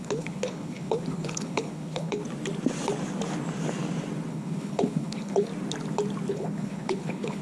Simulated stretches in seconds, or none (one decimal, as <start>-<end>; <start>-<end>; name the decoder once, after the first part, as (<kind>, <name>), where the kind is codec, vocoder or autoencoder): 0.0-2.2 (codec, HILCodec); 4.3-5.5; 6.3-7.4